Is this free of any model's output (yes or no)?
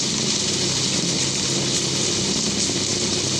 yes